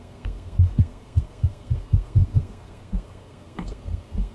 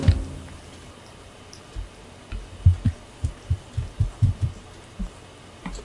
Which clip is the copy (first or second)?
first